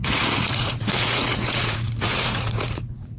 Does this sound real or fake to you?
fake